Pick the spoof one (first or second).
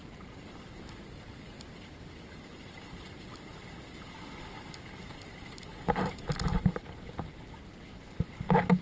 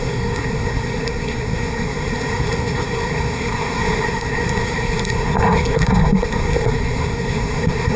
second